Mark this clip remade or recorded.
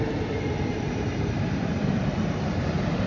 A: remade